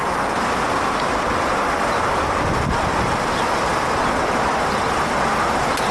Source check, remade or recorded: recorded